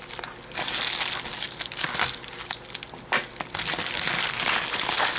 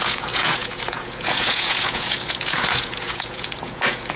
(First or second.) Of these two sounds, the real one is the first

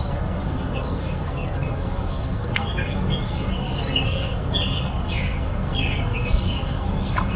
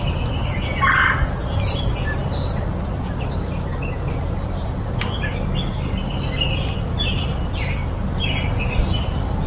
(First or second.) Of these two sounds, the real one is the second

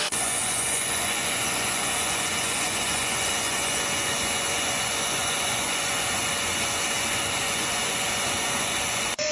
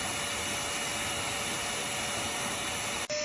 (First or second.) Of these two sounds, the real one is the second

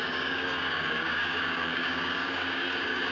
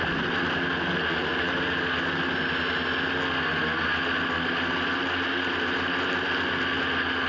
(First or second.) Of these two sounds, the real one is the second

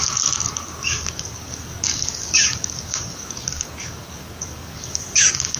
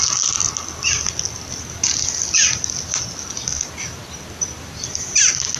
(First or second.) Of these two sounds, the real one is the second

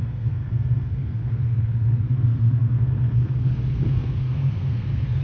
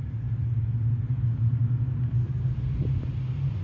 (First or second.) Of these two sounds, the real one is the second